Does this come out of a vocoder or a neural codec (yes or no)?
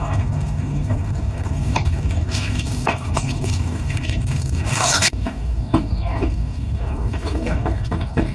yes